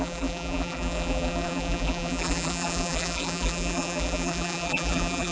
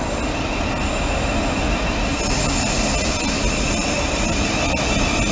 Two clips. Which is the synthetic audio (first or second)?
first